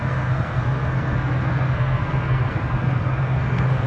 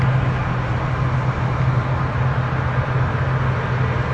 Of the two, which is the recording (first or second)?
second